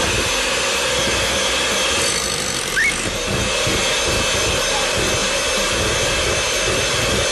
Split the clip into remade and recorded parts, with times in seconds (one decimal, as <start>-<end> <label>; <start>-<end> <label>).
0.0-7.3 recorded